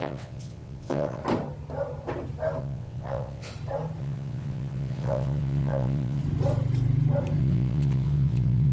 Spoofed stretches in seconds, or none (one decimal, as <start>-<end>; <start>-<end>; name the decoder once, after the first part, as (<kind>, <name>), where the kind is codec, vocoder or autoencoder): 0.0-1.2 (vocoder, WaveNeXt); 2.6-3.5; 4.0-6.2; 7.4-8.7